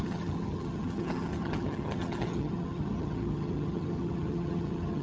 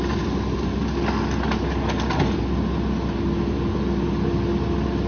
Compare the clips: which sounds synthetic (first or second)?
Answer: first